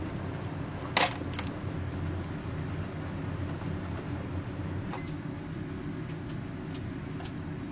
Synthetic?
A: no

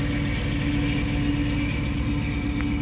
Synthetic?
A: no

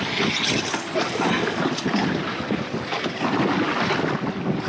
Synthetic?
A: no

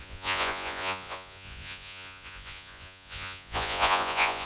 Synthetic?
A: yes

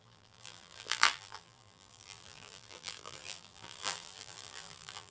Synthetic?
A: yes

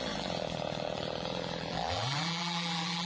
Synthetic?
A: yes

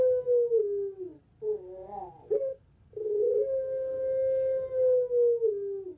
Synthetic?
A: no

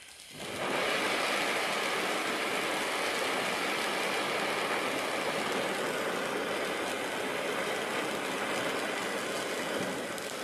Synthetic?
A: no